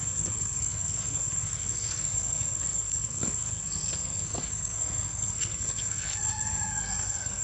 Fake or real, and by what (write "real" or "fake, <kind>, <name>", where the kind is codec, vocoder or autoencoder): fake, codec, SNAC